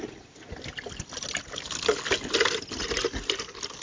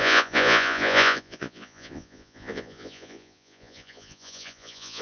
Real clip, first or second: first